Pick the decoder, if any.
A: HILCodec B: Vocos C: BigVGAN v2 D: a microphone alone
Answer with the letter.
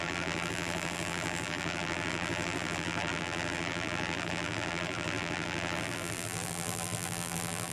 C